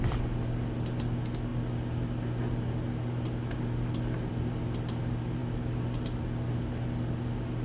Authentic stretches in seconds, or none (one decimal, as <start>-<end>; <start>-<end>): 0.0-7.6